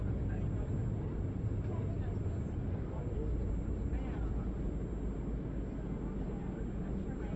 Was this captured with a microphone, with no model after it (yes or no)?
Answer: yes